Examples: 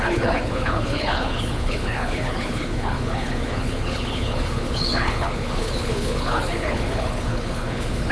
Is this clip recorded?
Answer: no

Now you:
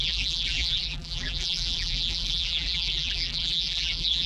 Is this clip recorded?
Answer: no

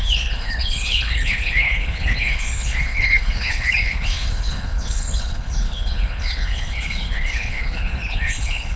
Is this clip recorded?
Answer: no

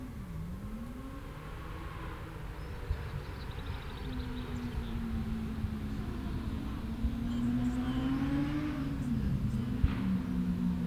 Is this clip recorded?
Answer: yes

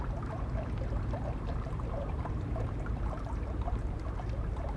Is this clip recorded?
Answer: no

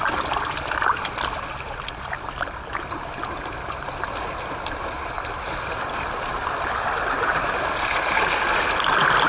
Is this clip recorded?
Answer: yes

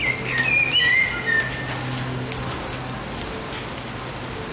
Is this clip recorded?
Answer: yes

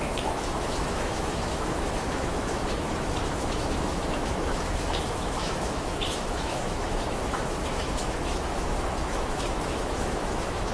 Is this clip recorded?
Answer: no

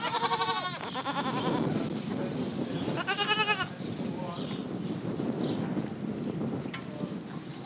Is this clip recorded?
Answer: yes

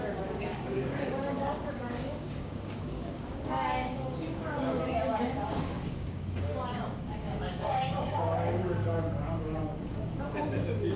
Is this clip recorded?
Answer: no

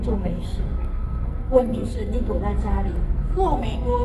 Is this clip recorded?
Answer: no